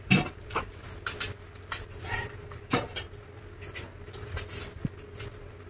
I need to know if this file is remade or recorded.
recorded